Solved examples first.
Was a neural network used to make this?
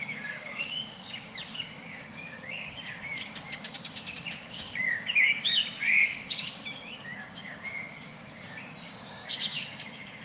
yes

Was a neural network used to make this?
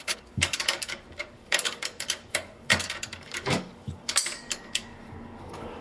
yes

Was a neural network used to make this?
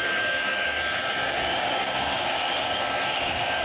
yes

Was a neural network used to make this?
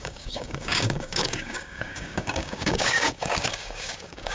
yes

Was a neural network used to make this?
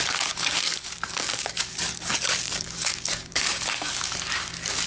yes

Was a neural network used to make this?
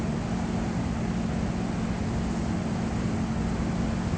no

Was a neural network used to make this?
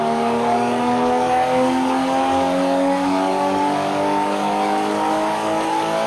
yes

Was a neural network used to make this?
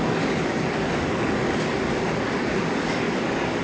yes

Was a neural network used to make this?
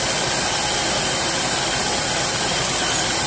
no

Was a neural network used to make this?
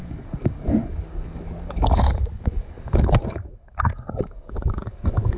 yes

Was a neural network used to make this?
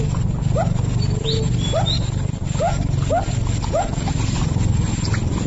no